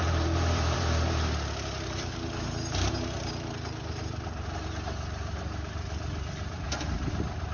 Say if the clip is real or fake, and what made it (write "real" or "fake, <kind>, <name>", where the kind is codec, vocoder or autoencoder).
fake, vocoder, BigVGAN v2